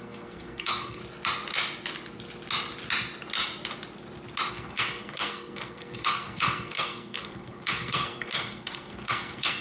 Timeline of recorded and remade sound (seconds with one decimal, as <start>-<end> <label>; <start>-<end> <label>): 0.0-1.0 remade; 1.0-4.5 recorded; 4.5-9.6 remade